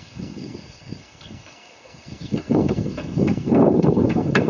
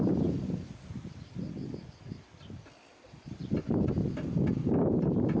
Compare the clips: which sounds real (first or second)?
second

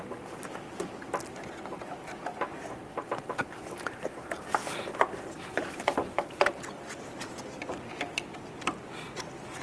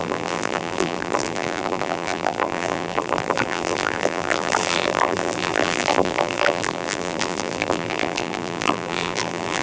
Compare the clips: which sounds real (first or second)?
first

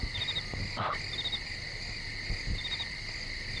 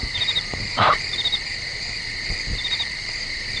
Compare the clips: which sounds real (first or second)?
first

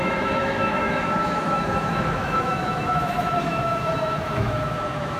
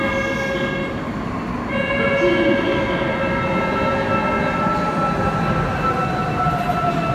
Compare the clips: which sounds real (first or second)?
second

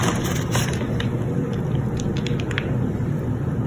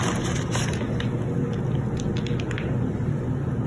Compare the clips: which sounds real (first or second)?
second